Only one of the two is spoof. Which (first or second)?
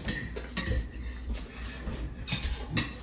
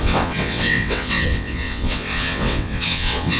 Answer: second